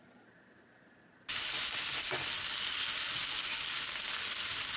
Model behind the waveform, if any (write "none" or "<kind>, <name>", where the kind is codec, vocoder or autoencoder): none